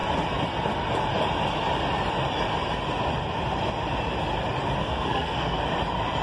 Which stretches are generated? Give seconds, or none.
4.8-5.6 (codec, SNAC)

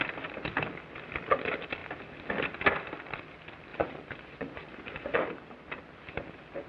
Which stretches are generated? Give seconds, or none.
3.7-5.2 (vocoder, Vocos)

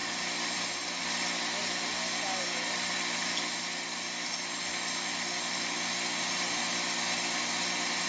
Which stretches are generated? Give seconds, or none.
none

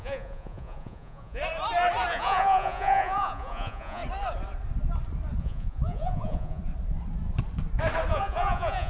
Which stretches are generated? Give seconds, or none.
0.0-1.4 (vocoder, Vocos); 2.1-4.0; 5.4-6.6; 8.1-8.9

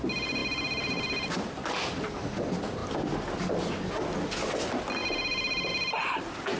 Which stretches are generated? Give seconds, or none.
none